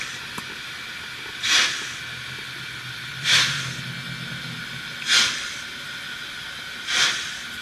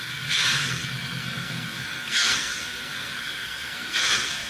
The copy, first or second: second